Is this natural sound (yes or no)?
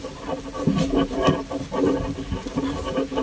yes